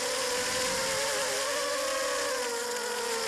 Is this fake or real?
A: real